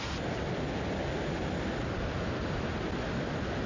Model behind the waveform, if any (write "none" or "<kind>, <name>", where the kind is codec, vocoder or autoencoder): none